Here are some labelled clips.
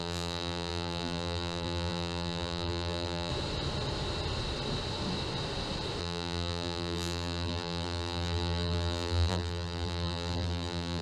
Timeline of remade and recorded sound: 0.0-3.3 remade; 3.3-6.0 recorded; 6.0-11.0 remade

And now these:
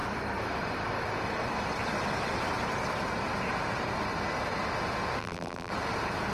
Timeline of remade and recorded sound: 0.0-5.2 recorded; 5.2-5.7 remade; 5.7-6.3 recorded

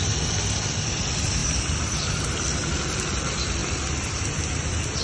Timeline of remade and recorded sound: 0.0-1.4 recorded; 1.4-3.0 remade; 3.0-5.0 recorded

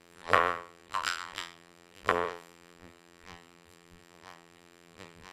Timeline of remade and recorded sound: 0.0-5.3 remade

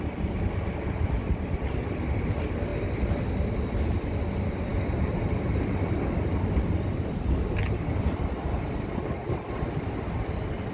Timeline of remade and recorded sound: 0.0-10.7 recorded

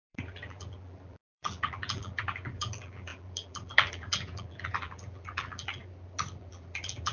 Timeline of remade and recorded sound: 0.0-5.8 remade; 5.8-6.4 recorded; 6.4-7.1 remade